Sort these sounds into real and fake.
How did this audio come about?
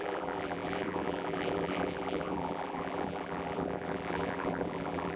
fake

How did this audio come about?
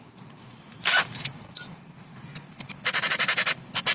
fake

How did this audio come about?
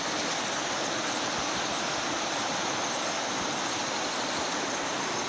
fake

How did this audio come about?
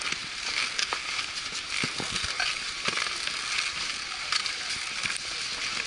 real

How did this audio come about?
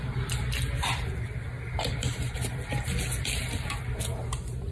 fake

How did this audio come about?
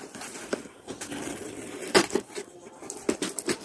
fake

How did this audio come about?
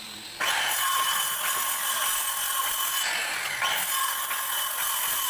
real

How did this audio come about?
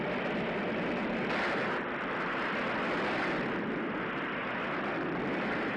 real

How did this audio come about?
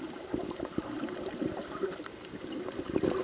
fake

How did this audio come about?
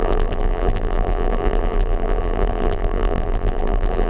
fake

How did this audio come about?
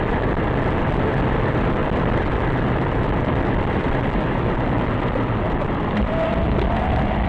fake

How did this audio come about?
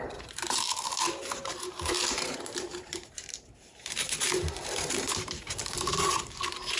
fake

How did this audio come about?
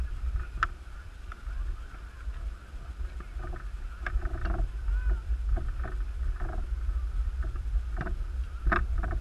real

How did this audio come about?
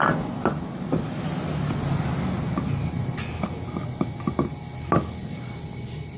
real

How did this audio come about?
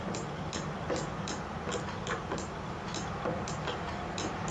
real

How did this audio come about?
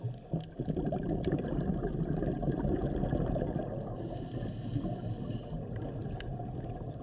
real